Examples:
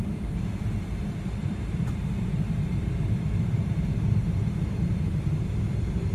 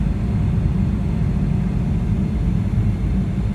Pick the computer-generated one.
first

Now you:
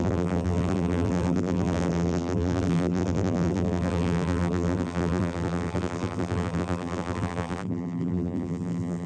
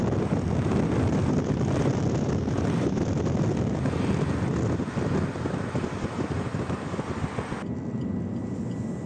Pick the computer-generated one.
first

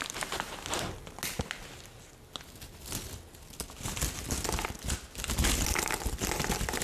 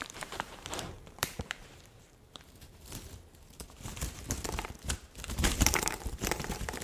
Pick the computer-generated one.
second